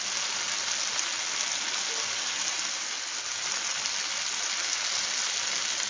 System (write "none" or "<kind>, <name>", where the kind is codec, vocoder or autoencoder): none